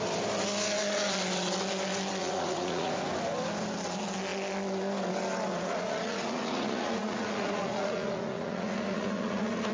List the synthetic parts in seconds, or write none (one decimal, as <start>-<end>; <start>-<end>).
2.2-2.9; 5.5-9.7